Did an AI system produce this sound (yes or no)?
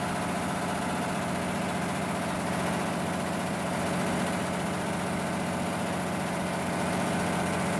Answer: no